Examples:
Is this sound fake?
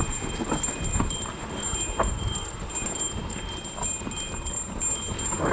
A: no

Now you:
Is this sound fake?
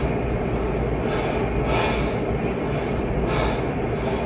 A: no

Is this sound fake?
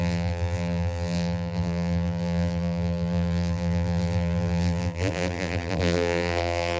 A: yes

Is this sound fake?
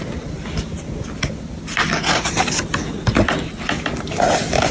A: no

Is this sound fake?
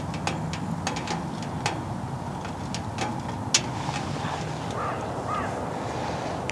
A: no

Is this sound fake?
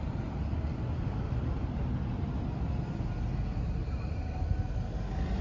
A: no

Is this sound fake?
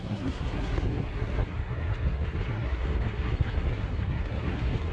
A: yes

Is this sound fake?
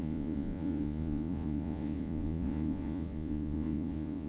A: yes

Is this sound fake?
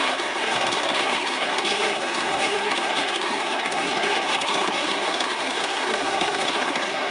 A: yes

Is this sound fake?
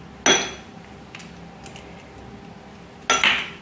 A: no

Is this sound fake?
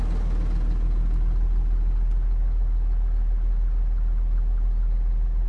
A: no